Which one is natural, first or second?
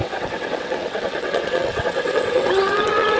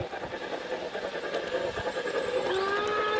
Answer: second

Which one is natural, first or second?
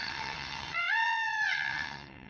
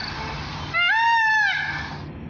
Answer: second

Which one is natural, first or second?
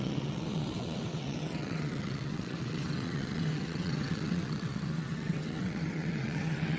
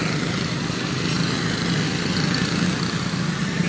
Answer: second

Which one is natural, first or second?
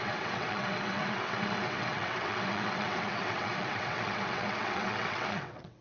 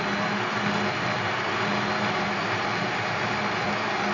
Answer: second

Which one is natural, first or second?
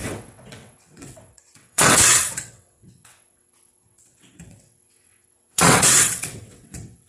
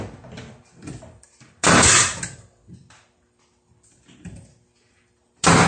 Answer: second